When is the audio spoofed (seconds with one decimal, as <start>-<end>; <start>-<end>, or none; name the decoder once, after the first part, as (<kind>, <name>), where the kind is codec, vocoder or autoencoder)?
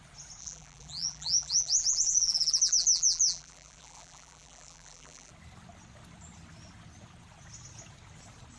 0.4-5.3 (vocoder, BigVGAN v2)